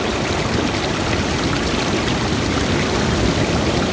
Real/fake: fake